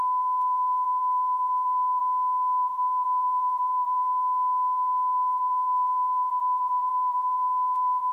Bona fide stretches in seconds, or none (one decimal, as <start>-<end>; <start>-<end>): none